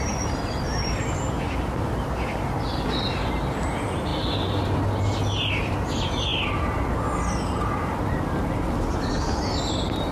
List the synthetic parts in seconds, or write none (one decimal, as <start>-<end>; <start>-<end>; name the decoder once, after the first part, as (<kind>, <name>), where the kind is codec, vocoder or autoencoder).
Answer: none